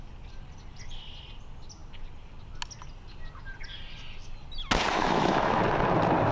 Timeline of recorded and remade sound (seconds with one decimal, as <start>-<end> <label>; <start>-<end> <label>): 0.0-5.0 recorded; 5.0-5.6 remade; 5.6-6.3 recorded